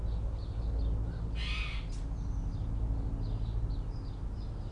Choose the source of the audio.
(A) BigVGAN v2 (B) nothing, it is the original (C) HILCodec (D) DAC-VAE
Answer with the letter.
B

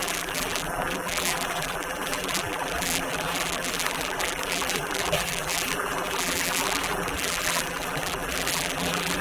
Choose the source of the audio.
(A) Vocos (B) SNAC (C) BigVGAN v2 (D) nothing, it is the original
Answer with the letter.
C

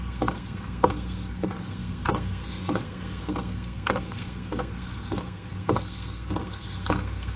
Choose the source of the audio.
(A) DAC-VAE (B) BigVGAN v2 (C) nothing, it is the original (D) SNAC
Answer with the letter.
D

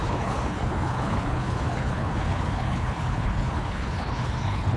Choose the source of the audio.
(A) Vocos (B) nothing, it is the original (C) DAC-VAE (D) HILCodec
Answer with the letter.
D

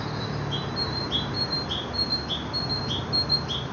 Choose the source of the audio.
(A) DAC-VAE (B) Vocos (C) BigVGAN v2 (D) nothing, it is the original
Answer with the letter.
D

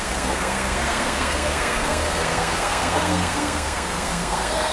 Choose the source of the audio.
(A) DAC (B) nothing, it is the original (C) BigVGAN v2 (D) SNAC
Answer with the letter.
D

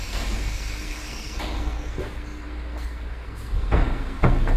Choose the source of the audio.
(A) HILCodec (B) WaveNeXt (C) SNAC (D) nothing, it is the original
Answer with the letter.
C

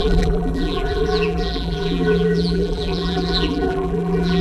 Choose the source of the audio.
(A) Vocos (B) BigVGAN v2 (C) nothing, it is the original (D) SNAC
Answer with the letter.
B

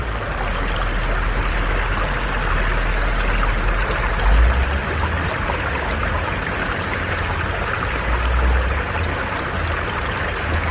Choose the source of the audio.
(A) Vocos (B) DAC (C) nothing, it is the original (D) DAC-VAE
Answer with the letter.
C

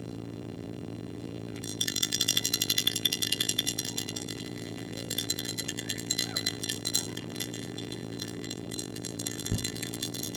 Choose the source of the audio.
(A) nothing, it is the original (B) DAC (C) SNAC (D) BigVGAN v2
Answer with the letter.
D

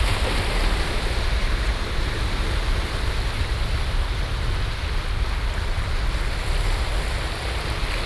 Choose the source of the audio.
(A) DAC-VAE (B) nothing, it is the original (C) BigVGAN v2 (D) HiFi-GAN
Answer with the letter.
B